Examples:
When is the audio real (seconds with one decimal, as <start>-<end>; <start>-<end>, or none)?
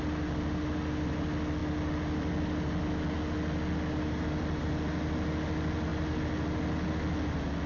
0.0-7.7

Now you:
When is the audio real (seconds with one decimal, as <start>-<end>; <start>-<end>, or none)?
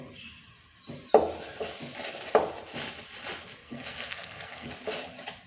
0.0-3.6; 4.7-5.5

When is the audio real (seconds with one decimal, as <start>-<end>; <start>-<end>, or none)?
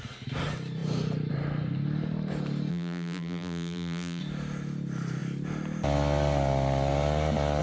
0.0-2.7; 4.2-7.6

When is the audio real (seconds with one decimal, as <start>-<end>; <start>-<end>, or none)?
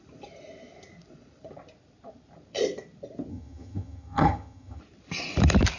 0.0-3.3; 4.8-5.8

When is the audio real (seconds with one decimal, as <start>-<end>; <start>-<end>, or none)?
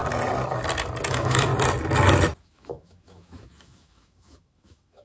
0.0-1.1; 1.5-2.4